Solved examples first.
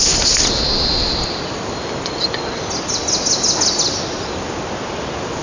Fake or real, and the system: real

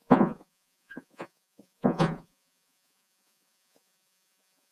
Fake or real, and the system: fake, vocoder, Vocos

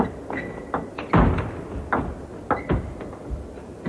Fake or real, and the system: real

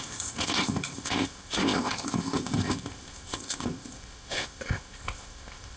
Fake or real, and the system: fake, codec, ZipCodec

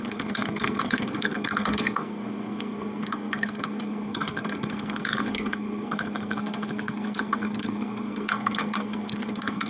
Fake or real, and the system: fake, codec, SNAC